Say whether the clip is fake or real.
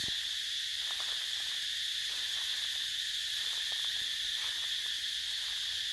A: real